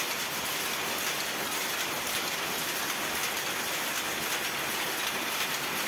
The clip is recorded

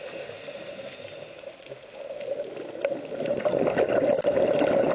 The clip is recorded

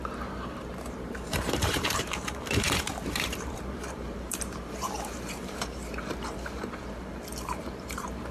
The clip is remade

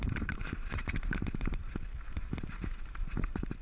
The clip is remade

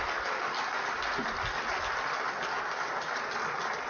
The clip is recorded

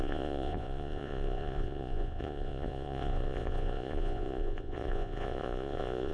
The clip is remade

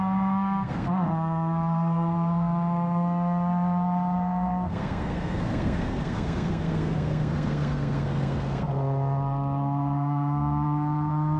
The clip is remade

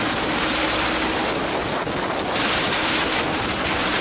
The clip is recorded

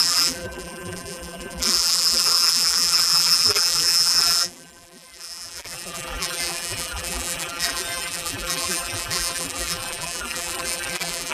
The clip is remade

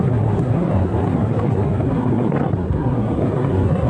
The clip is remade